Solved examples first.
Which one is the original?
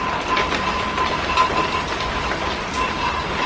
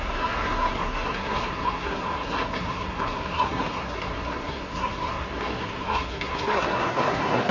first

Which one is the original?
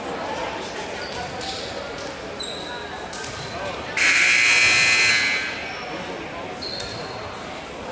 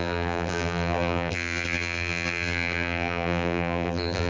first